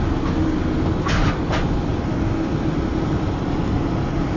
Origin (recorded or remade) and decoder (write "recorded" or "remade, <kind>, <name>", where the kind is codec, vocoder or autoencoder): recorded